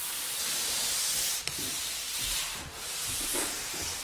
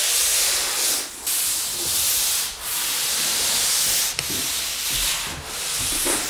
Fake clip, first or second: first